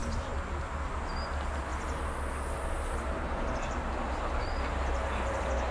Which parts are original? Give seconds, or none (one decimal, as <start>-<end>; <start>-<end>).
0.0-5.7